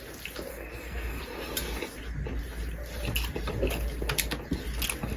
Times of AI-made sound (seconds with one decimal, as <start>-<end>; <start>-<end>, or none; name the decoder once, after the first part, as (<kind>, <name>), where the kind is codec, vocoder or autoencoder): 0.5-1.2 (codec, SNAC)

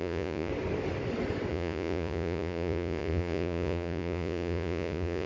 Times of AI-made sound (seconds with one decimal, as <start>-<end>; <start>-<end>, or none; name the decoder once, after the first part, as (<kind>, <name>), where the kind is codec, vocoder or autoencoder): 0.0-0.5 (vocoder, Vocos); 1.5-5.3

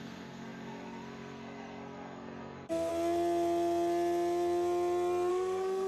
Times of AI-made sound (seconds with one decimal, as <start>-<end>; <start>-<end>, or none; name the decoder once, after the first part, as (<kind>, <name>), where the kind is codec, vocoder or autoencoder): 0.0-2.9 (codec, SNAC); 5.3-5.9

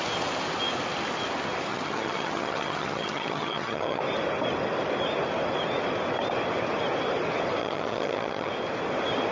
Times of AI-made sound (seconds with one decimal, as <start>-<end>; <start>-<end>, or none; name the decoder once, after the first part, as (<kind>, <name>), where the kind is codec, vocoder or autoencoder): 1.7-4.0 (vocoder, HiFi-GAN); 7.6-8.5

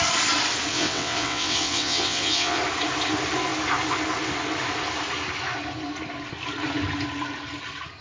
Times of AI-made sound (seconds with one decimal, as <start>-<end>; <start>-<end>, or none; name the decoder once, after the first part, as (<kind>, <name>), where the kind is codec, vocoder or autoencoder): 0.7-2.6 (vocoder, WaveNeXt)

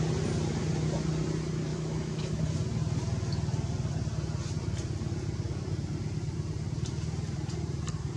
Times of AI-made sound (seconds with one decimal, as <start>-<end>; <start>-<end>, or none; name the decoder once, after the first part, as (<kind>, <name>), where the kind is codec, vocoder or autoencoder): 1.7-2.4 (autoencoder, DAC-VAE)

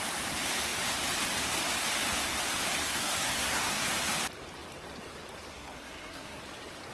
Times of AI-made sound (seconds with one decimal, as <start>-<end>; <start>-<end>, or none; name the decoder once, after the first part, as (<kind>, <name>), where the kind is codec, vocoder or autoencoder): 2.8-3.9 (codec, SNAC); 5.5-6.4